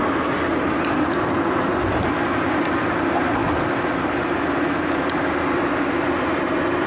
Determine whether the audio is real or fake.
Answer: real